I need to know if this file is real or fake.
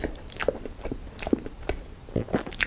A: real